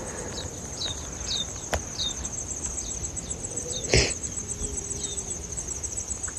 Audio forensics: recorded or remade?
recorded